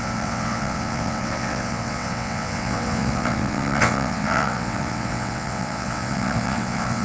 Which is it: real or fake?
fake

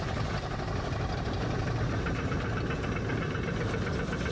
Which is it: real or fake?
real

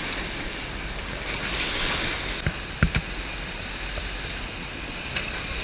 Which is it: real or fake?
real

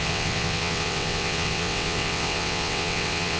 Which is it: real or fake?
fake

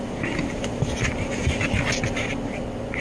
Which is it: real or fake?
real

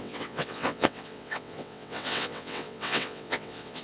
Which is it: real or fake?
fake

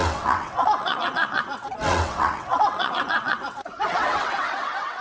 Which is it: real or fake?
fake